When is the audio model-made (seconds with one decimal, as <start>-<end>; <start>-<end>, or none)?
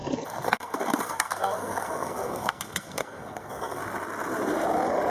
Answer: 0.0-3.8